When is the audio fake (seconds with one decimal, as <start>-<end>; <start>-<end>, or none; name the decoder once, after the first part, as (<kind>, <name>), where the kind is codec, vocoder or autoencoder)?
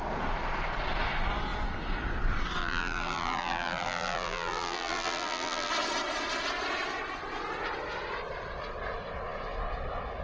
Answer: 2.6-5.7 (vocoder, BigVGAN v2)